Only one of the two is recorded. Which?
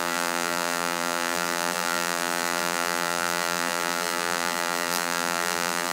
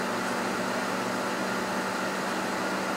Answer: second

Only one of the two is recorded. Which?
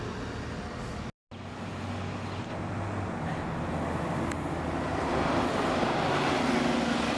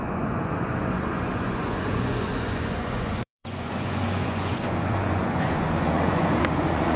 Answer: first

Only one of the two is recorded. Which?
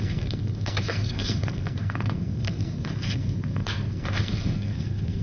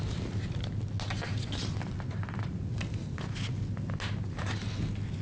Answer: second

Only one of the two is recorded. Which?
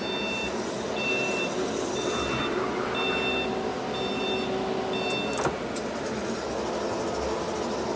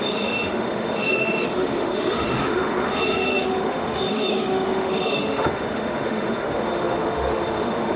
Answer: first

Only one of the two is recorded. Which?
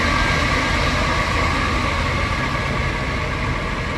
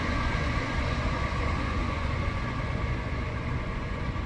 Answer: first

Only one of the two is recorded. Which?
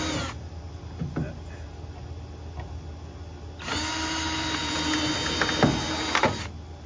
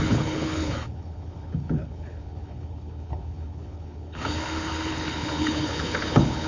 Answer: first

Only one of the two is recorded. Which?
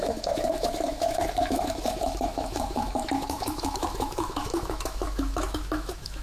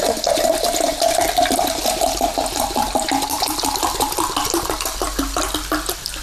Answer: second